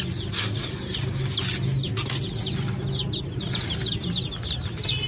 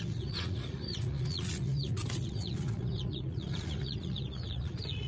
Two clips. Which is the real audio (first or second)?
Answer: first